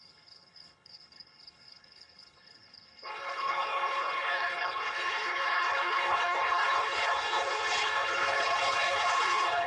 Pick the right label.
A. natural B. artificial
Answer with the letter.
B